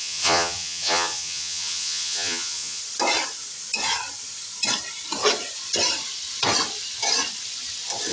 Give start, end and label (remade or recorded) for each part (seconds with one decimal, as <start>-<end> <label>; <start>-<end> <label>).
0.0-2.8 remade; 2.8-8.1 recorded